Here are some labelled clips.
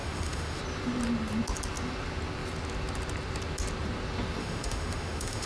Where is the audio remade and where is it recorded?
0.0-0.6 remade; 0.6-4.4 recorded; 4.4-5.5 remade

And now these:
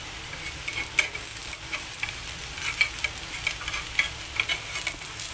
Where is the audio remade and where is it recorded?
0.0-1.4 recorded; 1.4-2.8 remade; 2.8-5.3 recorded

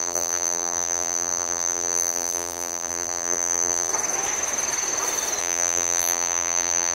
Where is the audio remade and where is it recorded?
0.0-3.9 remade; 3.9-5.4 recorded; 5.4-6.9 remade